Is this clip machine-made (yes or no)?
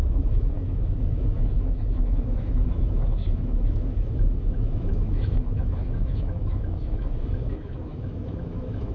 yes